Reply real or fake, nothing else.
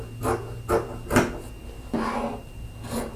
real